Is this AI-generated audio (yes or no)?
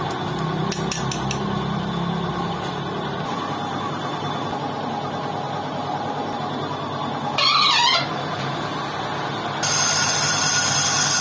no